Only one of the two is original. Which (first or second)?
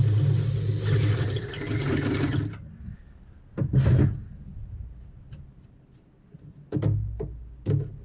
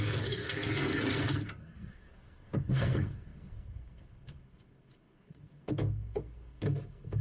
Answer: first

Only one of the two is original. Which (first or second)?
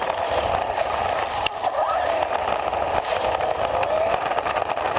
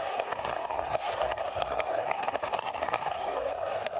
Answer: first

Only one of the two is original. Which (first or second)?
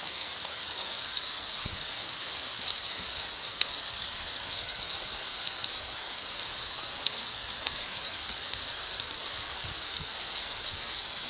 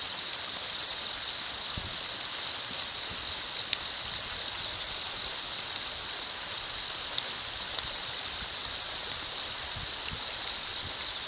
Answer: second